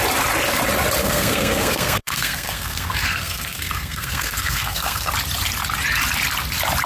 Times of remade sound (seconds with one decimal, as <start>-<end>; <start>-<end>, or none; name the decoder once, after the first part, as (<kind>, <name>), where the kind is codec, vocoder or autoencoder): 1.0-5.1 (codec, SNAC)